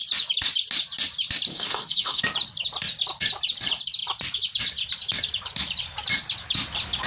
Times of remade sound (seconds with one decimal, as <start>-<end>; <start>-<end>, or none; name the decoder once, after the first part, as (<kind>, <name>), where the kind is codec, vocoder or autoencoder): 1.5-2.2 (autoencoder, DAC-VAE)